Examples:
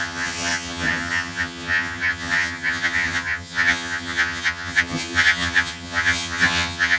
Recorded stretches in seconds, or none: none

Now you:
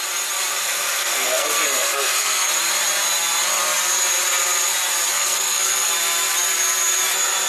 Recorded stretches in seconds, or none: 0.0-0.6; 2.5-5.1; 5.9-7.5

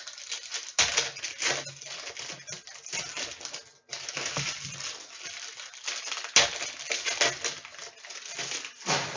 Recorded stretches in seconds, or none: 0.0-9.2

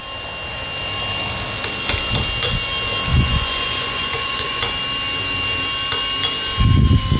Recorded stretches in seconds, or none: 0.0-3.1; 4.6-7.2

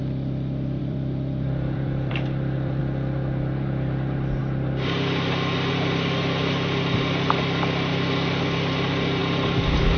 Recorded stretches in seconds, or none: 0.0-0.8; 2.8-10.0

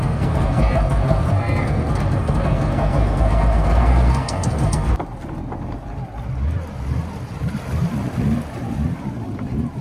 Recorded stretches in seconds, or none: 4.9-9.8